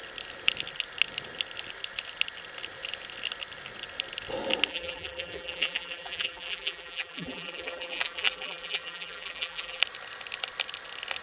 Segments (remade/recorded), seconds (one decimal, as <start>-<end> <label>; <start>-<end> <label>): 0.0-4.7 recorded; 4.7-9.8 remade; 9.8-11.2 recorded